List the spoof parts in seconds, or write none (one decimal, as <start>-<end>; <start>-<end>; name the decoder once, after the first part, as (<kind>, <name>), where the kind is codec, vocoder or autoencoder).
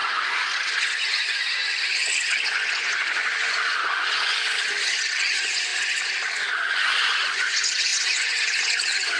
0.0-9.2 (vocoder, Vocos)